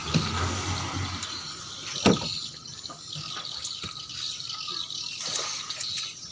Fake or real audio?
real